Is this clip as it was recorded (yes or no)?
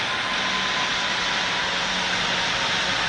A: yes